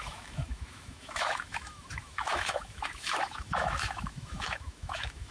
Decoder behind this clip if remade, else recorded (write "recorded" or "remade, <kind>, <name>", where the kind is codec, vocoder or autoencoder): remade, autoencoder, DAC-VAE